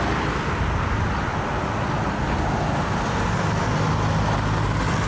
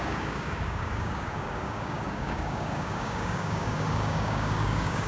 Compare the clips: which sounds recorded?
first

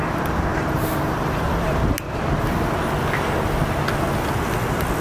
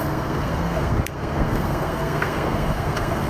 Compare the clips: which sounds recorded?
first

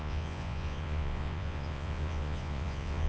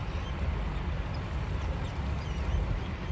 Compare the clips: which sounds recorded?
second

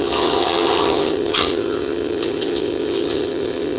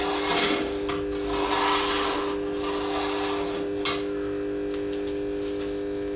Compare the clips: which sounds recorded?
second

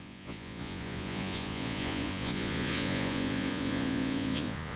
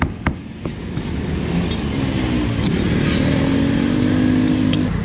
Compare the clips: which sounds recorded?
second